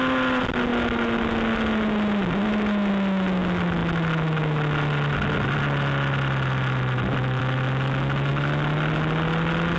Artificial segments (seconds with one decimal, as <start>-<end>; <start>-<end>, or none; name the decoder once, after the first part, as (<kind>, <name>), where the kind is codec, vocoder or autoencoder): none